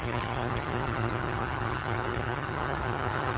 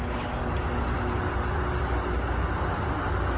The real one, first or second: second